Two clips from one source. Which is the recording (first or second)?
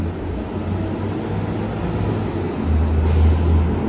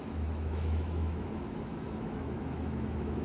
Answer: first